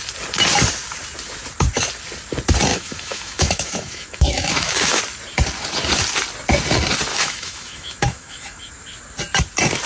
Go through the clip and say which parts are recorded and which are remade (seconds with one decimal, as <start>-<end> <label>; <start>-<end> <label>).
0.0-2.7 recorded; 2.7-5.0 remade; 5.0-7.1 recorded; 7.1-8.7 remade; 8.7-9.9 recorded